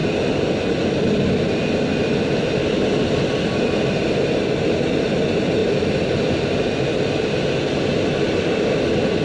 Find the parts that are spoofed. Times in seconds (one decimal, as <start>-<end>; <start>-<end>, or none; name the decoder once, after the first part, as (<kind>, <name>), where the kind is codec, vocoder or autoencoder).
none